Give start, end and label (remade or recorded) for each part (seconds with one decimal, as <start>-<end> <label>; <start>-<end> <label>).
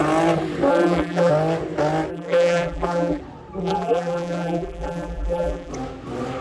0.0-0.7 recorded; 0.7-1.3 remade; 1.3-2.1 recorded; 2.1-3.2 remade; 3.2-3.6 recorded; 3.6-5.7 remade; 5.7-6.4 recorded